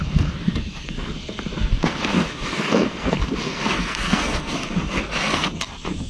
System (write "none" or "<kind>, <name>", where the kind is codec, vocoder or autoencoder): codec, SNAC